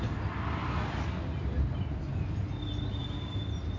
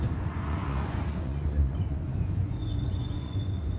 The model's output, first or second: second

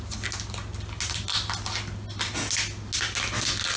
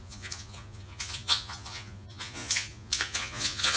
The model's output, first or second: second